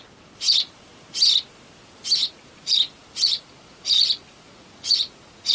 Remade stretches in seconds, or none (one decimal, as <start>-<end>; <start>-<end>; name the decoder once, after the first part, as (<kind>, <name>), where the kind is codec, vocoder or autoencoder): 2.2-5.5 (vocoder, Vocos)